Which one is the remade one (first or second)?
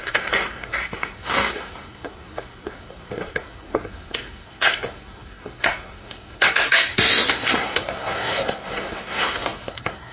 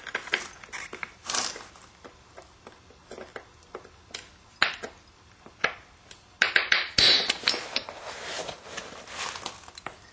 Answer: first